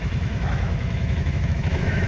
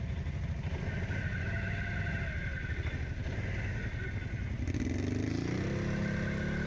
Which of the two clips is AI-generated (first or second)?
first